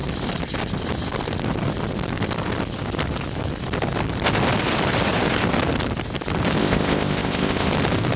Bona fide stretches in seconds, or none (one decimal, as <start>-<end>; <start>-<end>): 0.0-6.6; 7.7-8.2